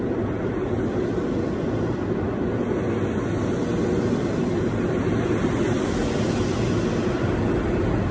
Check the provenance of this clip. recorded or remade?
recorded